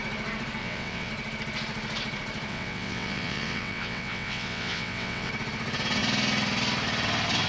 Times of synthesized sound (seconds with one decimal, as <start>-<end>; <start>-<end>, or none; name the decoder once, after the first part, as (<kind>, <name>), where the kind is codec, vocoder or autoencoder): 0.6-1.1 (vocoder, WaveNeXt); 2.5-5.3